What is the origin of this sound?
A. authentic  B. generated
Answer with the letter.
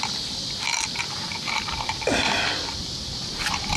A